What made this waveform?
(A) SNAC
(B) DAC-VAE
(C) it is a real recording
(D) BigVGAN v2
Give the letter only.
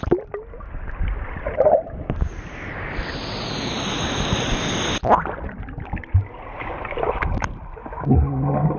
C